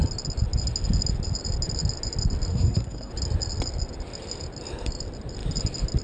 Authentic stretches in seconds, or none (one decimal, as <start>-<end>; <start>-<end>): 0.0-2.5; 3.1-6.0